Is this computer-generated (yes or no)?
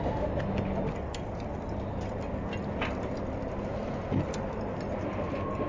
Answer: no